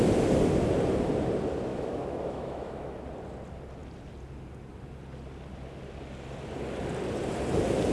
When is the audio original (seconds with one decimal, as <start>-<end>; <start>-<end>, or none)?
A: 0.0-1.7; 3.0-7.9